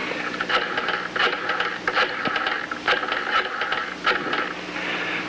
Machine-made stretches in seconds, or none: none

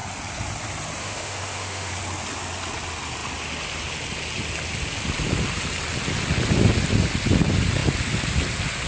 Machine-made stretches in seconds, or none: 1.0-1.9 (autoencoder, DAC-VAE)

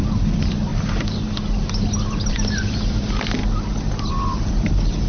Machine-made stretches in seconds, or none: 0.0-0.7 (vocoder, BigVGAN v2); 2.3-5.1